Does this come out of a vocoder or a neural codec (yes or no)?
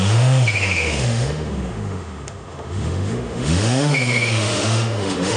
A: yes